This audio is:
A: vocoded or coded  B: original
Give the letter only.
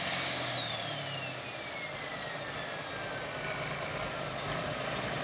B